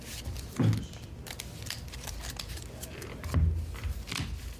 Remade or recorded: recorded